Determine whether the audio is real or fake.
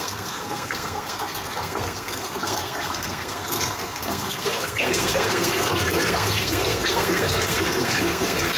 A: fake